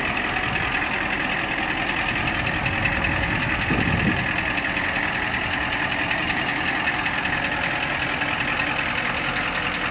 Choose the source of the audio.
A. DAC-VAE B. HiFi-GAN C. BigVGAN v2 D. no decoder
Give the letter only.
D